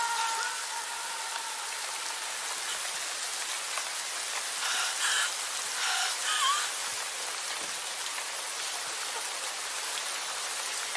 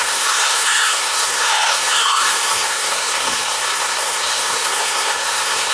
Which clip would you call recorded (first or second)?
first